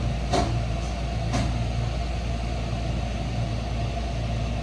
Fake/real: real